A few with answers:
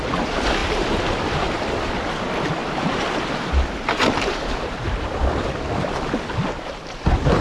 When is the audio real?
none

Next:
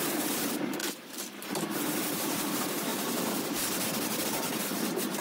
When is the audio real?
0.8-1.5; 2.9-3.6